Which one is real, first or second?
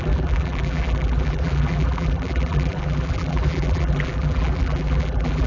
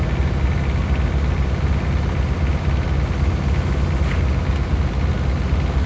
second